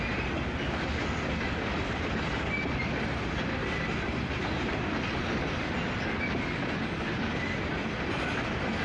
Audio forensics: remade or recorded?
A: recorded